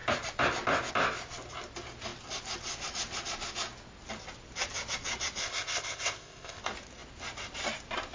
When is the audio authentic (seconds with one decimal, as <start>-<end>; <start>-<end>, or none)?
0.0-5.4; 6.6-8.1